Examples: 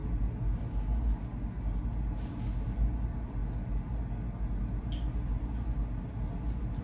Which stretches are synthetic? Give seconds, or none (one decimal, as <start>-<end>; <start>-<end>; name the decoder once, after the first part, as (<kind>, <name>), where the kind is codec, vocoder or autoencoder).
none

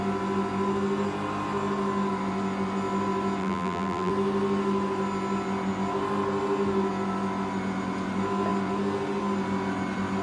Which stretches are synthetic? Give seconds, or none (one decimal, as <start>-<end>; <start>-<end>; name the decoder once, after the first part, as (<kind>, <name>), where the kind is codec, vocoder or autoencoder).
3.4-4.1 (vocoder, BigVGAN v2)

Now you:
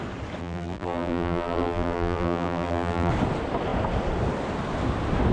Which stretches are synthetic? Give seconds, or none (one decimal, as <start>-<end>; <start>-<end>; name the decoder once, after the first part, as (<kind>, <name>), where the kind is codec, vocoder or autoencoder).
0.4-3.1 (vocoder, BigVGAN v2)

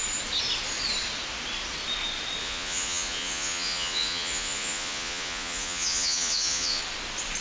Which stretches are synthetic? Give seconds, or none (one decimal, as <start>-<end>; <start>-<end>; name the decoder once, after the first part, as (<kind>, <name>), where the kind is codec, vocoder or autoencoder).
2.4-6.8 (vocoder, Vocos)

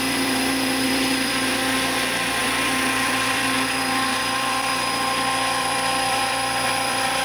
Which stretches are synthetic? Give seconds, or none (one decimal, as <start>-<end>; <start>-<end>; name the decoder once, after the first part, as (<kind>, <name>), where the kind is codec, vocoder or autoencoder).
0.0-4.7 (vocoder, BigVGAN v2); 5.6-7.2